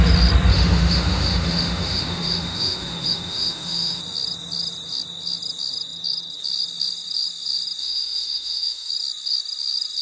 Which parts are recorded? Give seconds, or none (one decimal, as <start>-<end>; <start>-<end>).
0.0-0.5; 4.0-7.8; 8.9-10.0